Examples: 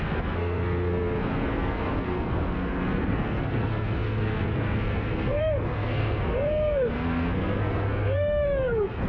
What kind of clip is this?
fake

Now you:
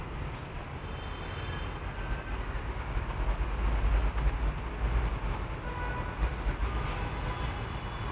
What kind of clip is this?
real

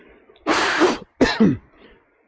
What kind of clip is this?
real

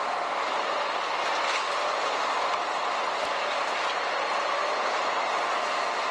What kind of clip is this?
real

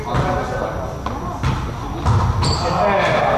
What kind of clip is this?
real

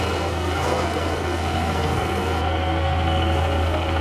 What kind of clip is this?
fake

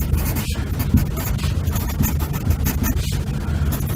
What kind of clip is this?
real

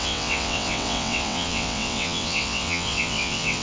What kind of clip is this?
fake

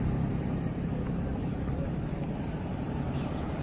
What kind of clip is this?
fake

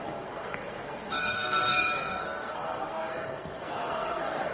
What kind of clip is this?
fake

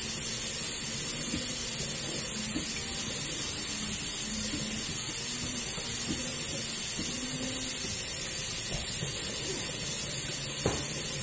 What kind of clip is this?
real